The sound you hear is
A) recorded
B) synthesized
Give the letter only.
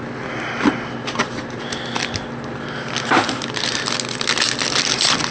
A